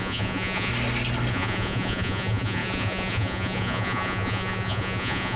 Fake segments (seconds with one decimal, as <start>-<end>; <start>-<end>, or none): 0.0-0.7; 1.3-5.4